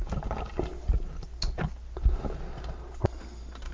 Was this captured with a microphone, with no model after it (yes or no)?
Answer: yes